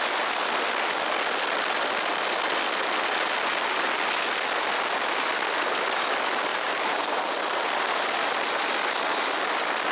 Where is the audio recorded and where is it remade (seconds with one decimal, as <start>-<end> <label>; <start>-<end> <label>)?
0.0-6.5 recorded; 6.5-7.4 remade; 7.4-9.9 recorded